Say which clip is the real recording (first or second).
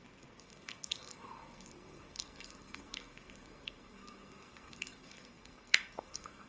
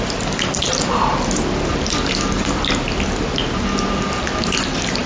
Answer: second